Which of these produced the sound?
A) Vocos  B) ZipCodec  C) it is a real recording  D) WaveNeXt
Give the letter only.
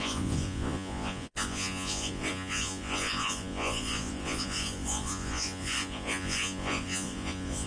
A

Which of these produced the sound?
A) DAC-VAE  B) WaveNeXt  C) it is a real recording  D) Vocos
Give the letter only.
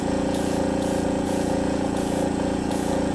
D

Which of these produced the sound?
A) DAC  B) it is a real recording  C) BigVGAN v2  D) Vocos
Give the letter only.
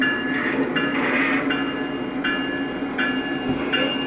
B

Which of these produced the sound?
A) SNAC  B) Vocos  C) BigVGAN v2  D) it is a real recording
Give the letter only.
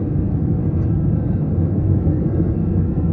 A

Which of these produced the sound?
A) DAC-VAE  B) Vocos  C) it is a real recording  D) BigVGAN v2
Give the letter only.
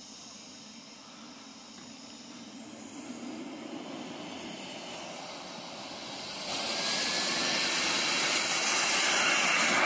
C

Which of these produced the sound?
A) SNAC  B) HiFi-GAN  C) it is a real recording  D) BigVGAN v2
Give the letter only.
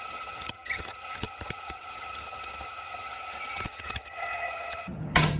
B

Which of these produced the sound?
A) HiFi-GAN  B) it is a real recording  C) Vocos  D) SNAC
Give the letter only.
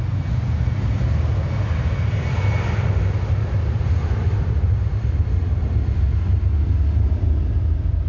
B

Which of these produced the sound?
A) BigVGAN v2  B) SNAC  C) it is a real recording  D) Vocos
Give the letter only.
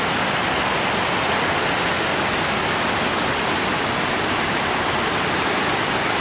C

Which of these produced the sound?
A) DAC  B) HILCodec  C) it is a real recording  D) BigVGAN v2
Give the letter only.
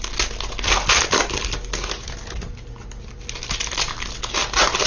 C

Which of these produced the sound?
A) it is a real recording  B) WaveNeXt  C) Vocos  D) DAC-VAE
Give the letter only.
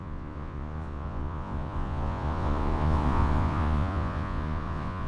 C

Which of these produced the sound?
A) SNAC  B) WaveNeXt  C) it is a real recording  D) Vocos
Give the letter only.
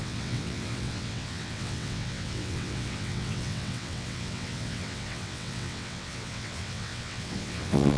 B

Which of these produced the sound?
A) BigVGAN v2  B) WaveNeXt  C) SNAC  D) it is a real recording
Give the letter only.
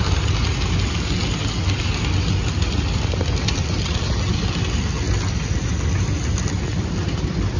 D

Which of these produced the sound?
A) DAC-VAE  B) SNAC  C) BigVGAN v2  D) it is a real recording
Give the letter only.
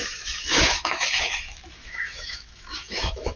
A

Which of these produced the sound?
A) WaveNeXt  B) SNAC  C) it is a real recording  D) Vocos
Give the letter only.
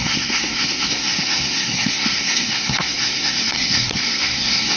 B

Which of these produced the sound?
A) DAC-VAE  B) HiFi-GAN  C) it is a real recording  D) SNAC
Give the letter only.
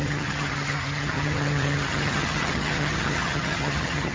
B